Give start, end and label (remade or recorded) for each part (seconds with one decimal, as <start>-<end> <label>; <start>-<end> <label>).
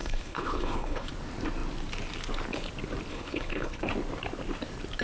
0.0-1.1 remade; 1.1-3.1 recorded; 3.1-3.8 remade; 3.8-5.0 recorded